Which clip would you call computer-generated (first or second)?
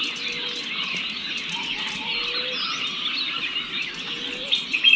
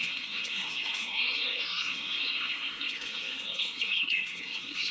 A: second